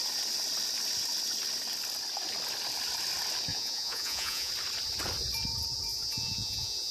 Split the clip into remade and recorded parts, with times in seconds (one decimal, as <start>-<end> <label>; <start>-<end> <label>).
0.0-3.5 recorded; 3.5-4.5 remade; 4.5-5.9 recorded; 5.9-6.9 remade